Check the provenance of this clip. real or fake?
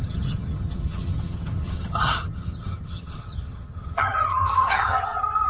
fake